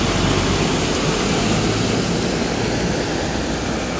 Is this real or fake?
real